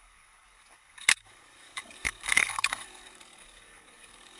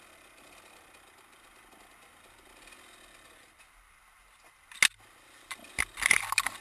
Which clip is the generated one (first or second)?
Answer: first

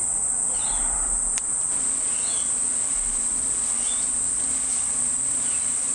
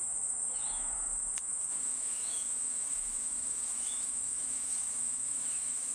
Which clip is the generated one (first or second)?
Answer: second